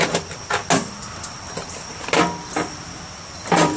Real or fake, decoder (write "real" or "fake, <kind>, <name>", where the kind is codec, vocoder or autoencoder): real